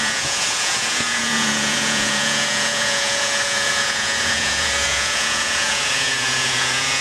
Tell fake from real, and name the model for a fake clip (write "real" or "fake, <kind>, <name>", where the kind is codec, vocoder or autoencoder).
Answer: fake, vocoder, Vocos